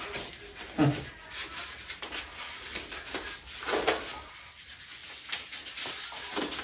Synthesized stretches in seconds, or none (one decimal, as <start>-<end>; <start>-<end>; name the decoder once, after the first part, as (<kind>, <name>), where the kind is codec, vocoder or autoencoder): none